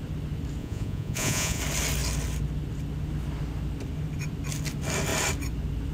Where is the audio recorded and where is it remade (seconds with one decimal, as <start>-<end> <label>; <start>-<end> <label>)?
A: 0.0-0.6 recorded; 0.6-1.6 remade; 1.6-5.9 recorded